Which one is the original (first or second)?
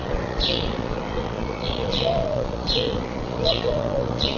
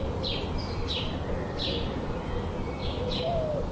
second